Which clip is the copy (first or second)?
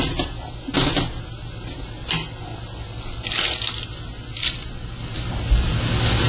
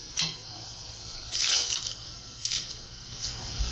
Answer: second